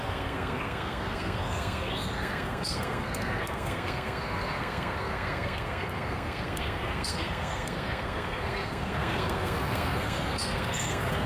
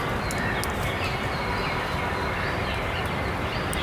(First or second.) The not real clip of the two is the first